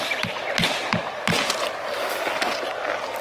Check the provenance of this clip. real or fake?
real